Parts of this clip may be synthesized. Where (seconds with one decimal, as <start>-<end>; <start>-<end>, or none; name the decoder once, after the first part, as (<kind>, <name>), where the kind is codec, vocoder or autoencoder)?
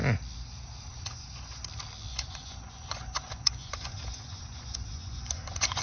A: 0.9-1.6 (vocoder, Vocos); 2.1-5.8